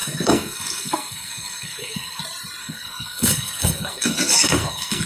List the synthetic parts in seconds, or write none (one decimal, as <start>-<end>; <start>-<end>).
0.0-2.2; 2.6-5.1